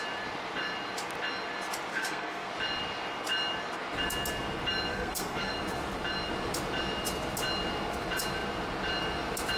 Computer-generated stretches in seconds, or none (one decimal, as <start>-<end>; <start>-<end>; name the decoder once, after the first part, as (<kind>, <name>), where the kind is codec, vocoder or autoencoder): 1.9-2.5 (codec, SNAC); 4.9-5.5